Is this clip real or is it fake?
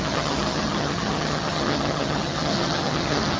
fake